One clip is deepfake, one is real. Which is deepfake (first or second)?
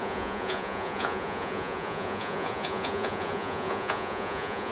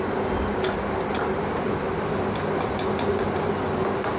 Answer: first